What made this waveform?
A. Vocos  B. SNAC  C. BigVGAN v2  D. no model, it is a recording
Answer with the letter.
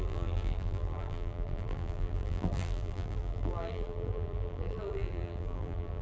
C